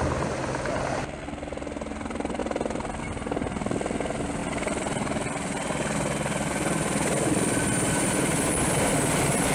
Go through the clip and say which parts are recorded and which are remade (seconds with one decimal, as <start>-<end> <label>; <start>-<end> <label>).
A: 0.0-9.5 recorded

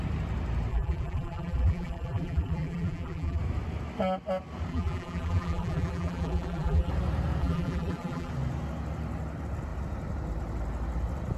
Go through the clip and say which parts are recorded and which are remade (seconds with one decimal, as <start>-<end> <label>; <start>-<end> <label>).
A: 0.0-0.7 recorded; 0.7-3.4 remade; 3.4-4.7 recorded; 4.7-6.9 remade; 6.9-7.4 recorded; 7.4-8.3 remade; 8.3-11.4 recorded

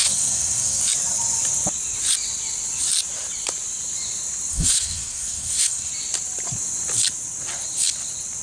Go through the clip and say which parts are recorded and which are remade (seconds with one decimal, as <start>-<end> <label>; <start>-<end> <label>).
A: 0.0-0.8 remade; 0.8-4.5 recorded; 4.5-5.9 remade; 5.9-8.4 recorded

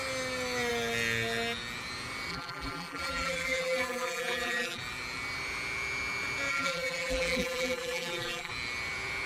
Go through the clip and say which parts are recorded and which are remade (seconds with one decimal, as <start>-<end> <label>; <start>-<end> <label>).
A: 0.0-2.3 recorded; 2.3-4.8 remade; 4.8-6.5 recorded; 6.5-8.5 remade; 8.5-9.3 recorded

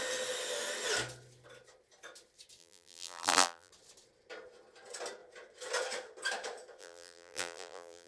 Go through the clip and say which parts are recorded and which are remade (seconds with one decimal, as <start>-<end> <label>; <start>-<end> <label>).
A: 0.0-2.6 recorded; 2.6-3.7 remade; 3.7-6.8 recorded; 6.8-8.1 remade